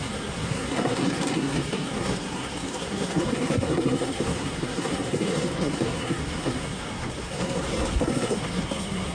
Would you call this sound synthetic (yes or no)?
yes